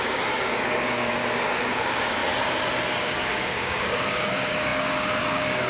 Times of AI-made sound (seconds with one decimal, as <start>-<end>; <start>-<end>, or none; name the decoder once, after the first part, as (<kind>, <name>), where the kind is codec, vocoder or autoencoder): 0.0-2.2 (codec, DAC); 3.0-5.7